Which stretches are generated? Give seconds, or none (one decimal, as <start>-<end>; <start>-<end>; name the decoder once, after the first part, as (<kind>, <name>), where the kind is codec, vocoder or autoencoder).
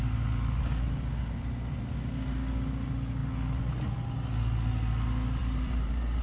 5.4-6.2 (vocoder, BigVGAN v2)